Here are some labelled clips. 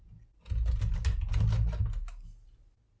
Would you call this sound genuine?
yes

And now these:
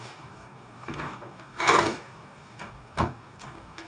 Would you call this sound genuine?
no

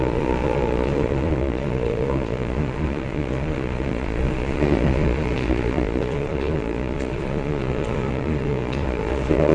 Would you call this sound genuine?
no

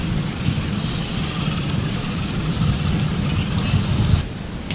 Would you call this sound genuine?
yes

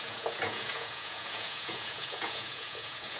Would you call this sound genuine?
no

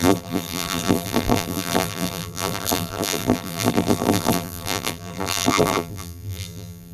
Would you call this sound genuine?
no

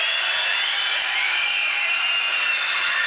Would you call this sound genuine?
yes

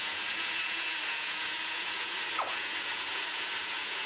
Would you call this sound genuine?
no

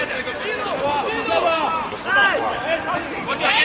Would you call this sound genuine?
no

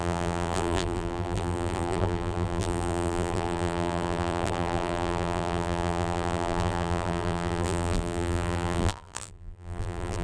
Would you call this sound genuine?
no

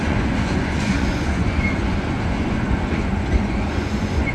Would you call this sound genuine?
no